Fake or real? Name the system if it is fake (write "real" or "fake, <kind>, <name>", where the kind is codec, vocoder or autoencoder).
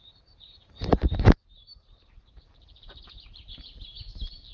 fake, vocoder, BigVGAN v2